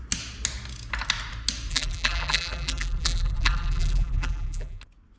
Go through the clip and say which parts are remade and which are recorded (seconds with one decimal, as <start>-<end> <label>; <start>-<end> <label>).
0.0-1.7 recorded; 1.7-4.8 remade; 4.8-5.2 recorded